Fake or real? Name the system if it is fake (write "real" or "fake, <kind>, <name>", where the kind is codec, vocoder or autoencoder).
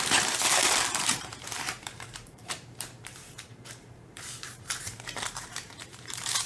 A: fake, vocoder, BigVGAN v2